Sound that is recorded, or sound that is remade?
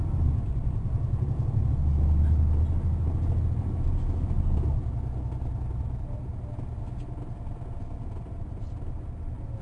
recorded